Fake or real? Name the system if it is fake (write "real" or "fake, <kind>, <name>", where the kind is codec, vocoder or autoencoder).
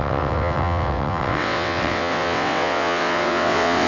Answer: fake, vocoder, WaveNeXt